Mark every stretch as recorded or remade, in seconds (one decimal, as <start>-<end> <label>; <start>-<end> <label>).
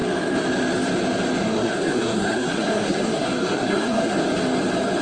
0.0-1.4 recorded; 1.4-4.2 remade; 4.2-5.0 recorded